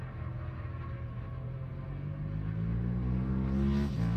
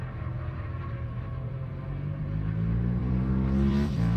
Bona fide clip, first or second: first